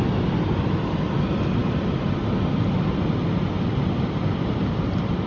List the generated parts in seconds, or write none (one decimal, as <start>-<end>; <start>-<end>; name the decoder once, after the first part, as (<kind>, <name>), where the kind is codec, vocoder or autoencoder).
none